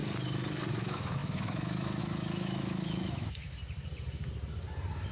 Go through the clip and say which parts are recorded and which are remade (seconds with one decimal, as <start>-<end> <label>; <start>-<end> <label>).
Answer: 0.0-0.7 recorded; 0.7-3.6 remade; 3.6-5.1 recorded